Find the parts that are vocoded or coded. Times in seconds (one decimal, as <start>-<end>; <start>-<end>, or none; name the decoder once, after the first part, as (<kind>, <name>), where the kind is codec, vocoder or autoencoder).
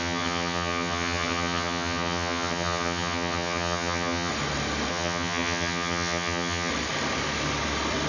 0.0-4.3 (vocoder, HiFi-GAN); 4.9-6.7